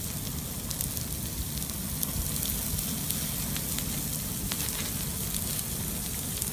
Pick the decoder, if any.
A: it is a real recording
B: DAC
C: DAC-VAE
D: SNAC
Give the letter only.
A